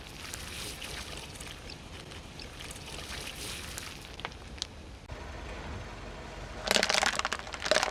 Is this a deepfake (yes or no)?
no